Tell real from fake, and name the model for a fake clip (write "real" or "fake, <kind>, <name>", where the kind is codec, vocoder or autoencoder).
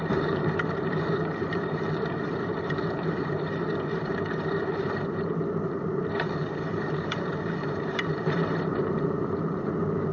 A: fake, vocoder, BigVGAN v2